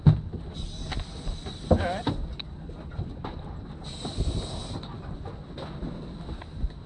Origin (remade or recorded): recorded